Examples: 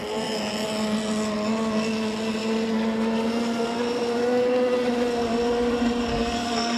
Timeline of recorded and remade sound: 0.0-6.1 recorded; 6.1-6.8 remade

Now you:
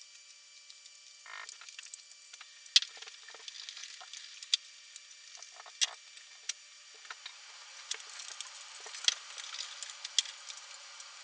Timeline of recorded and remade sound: 0.0-11.2 recorded